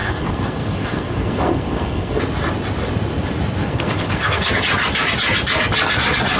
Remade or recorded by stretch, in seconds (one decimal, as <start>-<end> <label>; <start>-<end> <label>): 0.0-2.2 remade; 2.2-3.6 recorded; 3.6-4.5 remade; 4.5-6.4 recorded